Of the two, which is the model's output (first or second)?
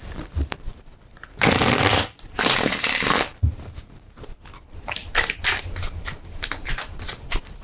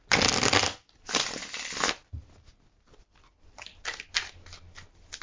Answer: first